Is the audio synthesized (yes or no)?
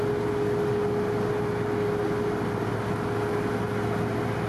no